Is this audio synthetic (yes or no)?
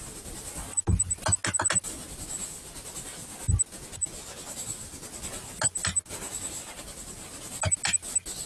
no